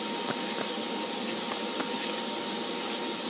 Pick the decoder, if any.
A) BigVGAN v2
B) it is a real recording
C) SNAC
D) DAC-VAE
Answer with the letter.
B